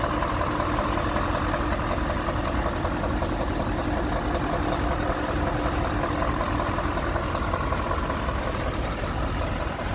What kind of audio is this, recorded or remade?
recorded